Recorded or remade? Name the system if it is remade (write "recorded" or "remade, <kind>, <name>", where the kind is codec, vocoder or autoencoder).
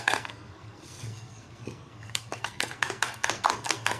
remade, codec, SNAC